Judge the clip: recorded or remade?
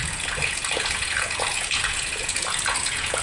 remade